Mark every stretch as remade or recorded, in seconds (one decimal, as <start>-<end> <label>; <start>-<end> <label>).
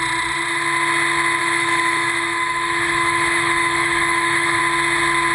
0.0-1.4 recorded; 1.4-4.6 remade; 4.6-5.3 recorded